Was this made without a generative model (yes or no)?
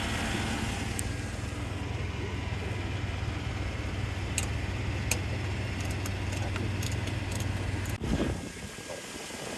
yes